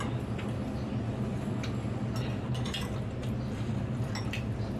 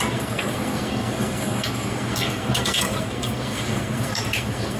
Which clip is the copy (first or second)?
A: second